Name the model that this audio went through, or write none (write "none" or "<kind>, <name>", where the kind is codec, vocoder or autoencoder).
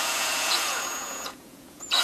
vocoder, Vocos